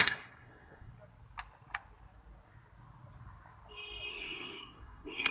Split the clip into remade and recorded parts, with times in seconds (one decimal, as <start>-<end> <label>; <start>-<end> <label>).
0.0-0.9 remade; 0.9-4.1 recorded; 4.1-5.3 remade